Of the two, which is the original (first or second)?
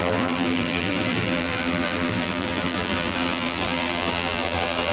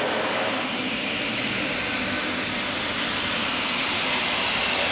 second